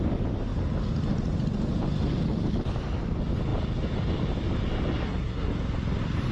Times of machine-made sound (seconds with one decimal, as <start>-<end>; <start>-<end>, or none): 5.0-5.5